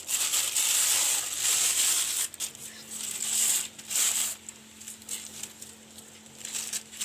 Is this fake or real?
real